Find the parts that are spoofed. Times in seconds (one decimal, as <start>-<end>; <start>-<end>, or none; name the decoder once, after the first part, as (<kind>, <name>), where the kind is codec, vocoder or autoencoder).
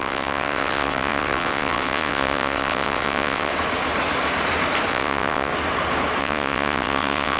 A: 0.0-3.5 (vocoder, WaveNeXt); 4.9-5.5; 6.2-7.4